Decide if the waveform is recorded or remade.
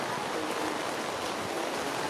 recorded